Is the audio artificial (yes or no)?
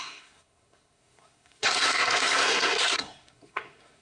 yes